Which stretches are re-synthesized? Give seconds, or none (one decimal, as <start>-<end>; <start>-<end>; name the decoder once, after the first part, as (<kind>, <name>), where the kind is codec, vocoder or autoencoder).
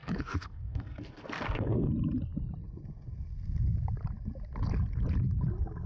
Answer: 0.0-1.9 (codec, SNAC)